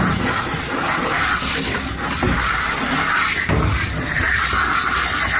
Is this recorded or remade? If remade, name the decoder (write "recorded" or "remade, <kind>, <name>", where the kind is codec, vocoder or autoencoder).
recorded